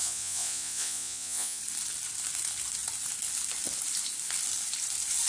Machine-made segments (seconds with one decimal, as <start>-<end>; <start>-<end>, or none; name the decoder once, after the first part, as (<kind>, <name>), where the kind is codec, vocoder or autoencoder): 0.0-1.6 (vocoder, Vocos)